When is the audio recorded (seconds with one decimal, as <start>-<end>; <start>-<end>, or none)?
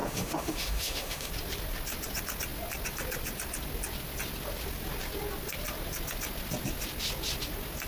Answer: 1.3-7.9